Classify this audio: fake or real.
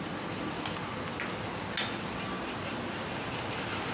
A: real